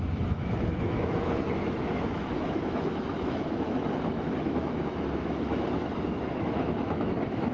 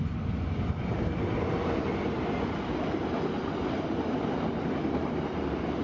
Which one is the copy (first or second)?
first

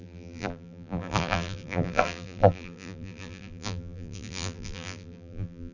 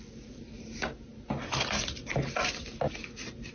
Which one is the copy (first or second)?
first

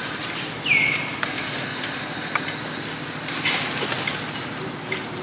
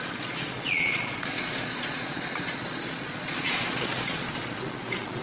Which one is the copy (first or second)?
second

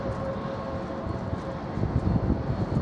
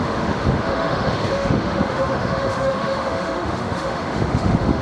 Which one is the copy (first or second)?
second